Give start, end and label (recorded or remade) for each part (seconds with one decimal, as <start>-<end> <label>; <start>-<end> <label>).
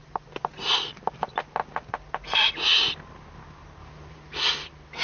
0.0-3.8 recorded; 3.8-4.4 remade; 4.4-5.0 recorded